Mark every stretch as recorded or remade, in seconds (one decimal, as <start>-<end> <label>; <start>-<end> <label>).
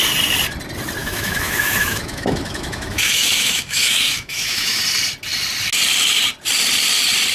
0.0-1.0 recorded; 1.0-4.8 remade; 4.8-7.3 recorded